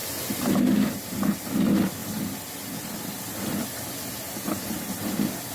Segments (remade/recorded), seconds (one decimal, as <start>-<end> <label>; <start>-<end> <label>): 0.0-5.5 recorded